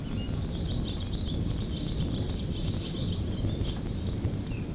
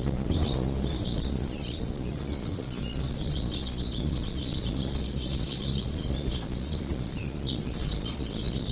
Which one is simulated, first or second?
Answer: second